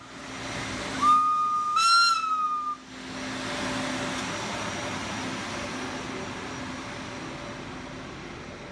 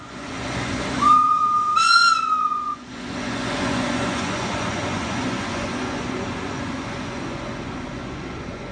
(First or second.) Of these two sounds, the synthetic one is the second